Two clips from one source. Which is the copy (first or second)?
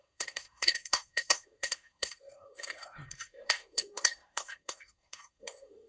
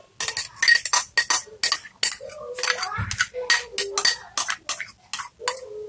first